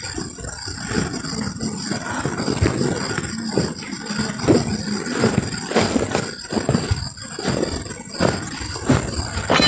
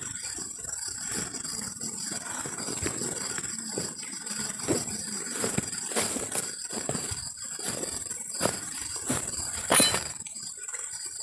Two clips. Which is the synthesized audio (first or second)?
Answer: second